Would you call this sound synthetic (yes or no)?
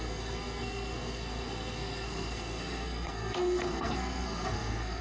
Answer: yes